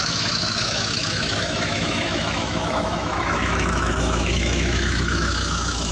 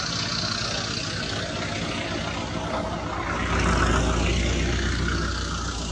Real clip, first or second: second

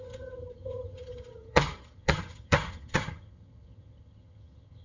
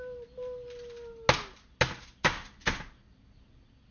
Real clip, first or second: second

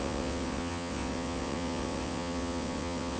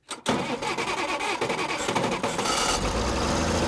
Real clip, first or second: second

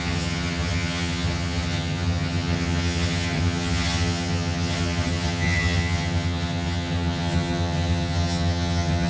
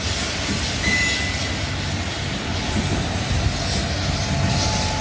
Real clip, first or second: second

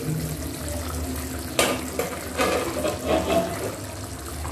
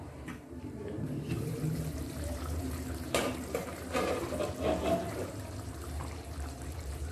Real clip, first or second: first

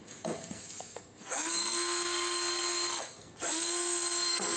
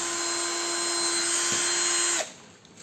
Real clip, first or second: second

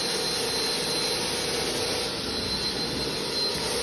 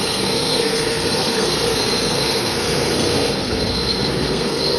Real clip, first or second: first